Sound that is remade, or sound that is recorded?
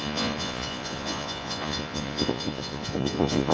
remade